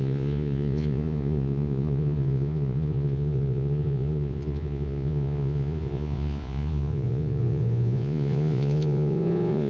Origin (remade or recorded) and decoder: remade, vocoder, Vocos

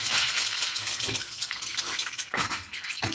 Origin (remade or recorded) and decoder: remade, codec, SNAC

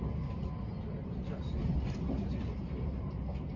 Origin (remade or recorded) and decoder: recorded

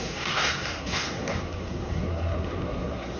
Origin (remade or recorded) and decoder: remade, codec, SNAC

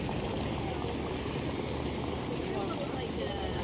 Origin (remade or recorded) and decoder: recorded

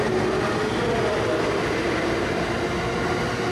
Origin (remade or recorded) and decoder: recorded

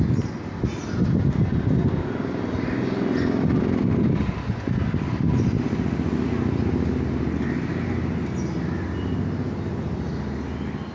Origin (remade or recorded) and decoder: recorded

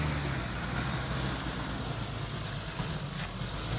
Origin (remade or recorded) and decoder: recorded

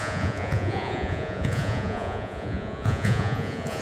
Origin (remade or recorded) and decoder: remade, vocoder, Vocos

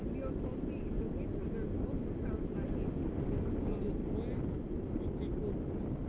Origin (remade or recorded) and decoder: recorded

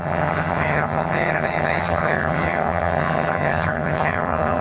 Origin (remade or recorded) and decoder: remade, vocoder, HiFi-GAN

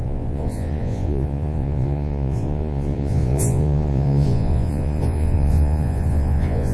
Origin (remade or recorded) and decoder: remade, vocoder, Vocos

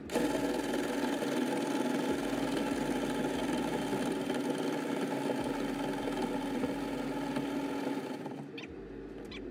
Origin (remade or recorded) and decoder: recorded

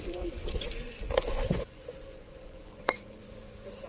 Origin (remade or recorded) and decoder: remade, vocoder, Vocos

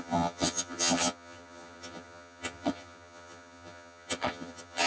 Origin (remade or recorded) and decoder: remade, vocoder, HiFi-GAN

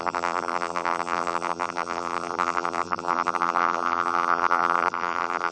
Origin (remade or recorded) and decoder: remade, vocoder, BigVGAN v2